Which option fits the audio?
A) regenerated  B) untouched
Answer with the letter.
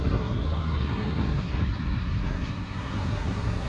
A